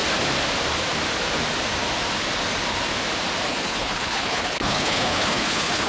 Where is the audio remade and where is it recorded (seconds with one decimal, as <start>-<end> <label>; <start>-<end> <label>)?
0.0-3.5 recorded; 3.5-5.9 remade